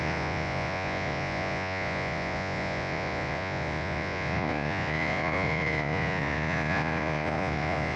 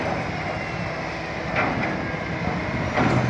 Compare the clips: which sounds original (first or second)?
second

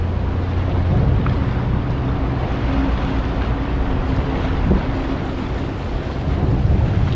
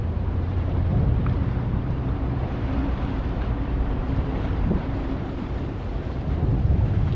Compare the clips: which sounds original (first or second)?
first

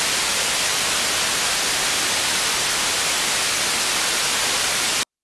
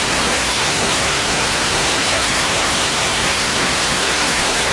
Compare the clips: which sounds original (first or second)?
first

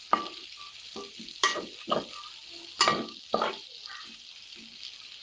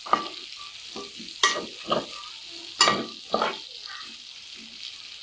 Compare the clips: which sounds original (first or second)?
second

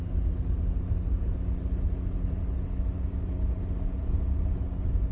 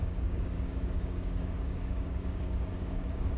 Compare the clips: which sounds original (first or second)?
first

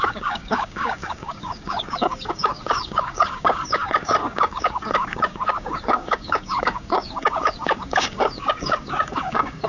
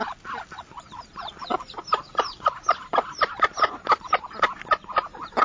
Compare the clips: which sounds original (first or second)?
second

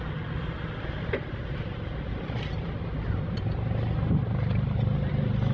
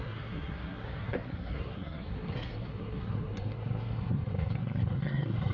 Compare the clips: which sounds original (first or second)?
first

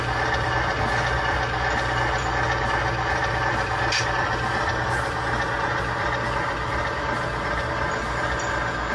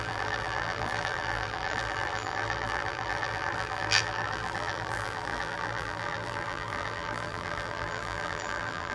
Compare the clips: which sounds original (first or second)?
first